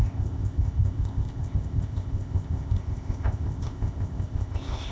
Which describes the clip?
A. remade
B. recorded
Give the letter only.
A